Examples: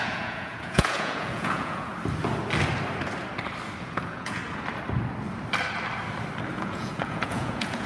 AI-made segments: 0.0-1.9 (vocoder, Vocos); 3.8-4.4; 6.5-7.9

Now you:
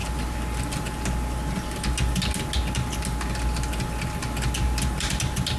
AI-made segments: none

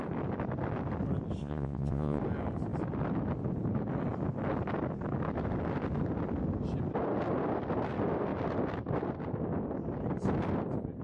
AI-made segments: 1.4-2.2 (vocoder, Vocos)